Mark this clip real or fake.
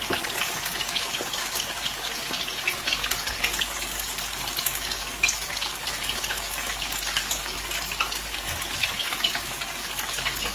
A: fake